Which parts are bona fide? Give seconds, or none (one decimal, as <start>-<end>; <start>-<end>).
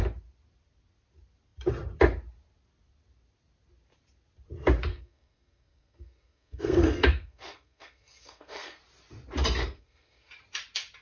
0.0-4.9; 8.8-9.6; 10.3-11.0